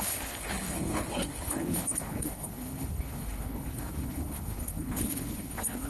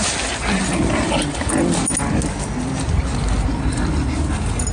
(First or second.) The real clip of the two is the second